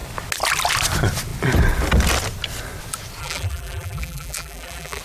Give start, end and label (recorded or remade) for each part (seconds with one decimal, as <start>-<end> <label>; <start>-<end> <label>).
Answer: 0.0-3.2 recorded; 3.2-5.0 remade